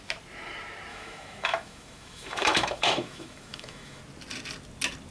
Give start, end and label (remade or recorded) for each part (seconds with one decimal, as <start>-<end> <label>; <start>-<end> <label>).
0.0-0.9 recorded; 0.9-4.0 remade; 4.0-5.1 recorded